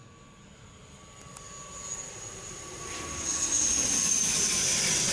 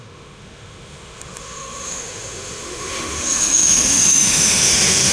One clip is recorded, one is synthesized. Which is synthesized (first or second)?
second